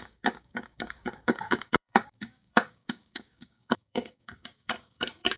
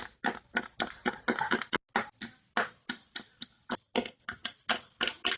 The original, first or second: second